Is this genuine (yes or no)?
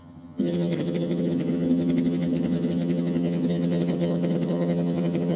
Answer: no